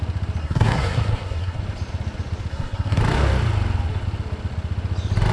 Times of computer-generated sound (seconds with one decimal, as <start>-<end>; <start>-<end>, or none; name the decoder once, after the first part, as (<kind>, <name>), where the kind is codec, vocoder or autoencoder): 0.4-1.6 (codec, SNAC); 2.5-3.0